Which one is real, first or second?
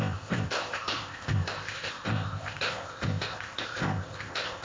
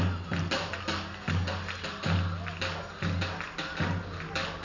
second